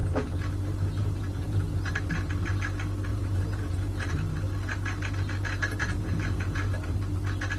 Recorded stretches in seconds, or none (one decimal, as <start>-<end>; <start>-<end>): 0.5-1.0; 1.9-3.1; 4.1-5.8; 6.6-7.6